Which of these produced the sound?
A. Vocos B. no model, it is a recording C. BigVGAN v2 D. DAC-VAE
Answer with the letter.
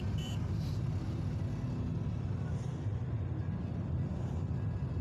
B